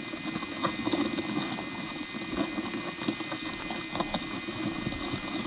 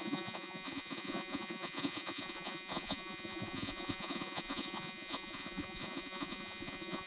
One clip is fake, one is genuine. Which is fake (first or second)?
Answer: second